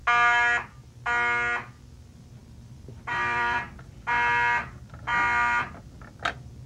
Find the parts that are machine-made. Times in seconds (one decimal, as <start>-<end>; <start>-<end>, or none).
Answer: 2.4-3.8

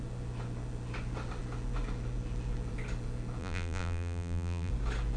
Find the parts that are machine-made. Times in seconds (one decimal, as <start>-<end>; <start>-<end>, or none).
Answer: 3.4-4.7

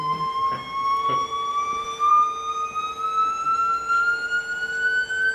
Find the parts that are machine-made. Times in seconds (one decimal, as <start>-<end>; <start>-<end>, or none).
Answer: 0.9-2.1

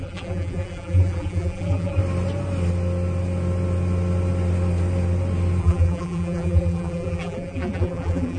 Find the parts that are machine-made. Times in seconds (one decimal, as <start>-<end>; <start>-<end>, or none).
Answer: 0.0-2.0; 5.6-8.4

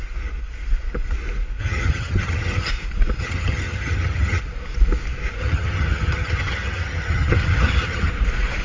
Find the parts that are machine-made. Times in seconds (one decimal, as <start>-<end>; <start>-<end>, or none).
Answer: 1.6-2.7; 3.2-4.4; 5.4-8.1

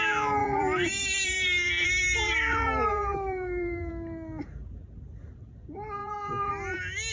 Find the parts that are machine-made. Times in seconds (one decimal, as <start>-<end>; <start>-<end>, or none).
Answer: 0.4-3.9; 6.0-6.5

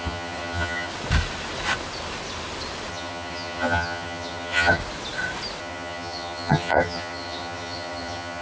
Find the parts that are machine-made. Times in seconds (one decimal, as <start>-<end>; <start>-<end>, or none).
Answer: 0.0-0.9; 2.9-4.8; 5.6-8.4

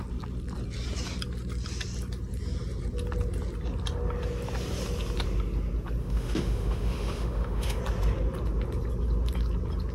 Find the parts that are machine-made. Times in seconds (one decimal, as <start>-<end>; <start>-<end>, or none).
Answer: 6.0-7.8